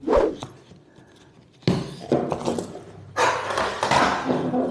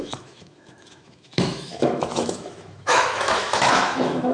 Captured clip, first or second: first